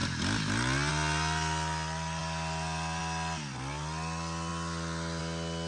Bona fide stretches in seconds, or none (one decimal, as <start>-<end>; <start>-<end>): 0.0-5.7